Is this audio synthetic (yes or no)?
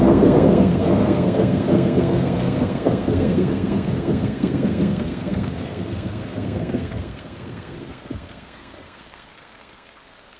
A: yes